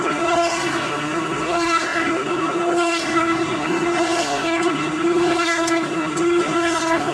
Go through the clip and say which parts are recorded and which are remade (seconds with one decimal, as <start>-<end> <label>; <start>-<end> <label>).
0.0-7.1 remade